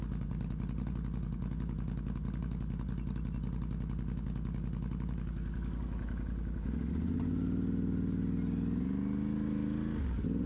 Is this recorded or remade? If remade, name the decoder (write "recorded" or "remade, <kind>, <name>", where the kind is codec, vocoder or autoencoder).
recorded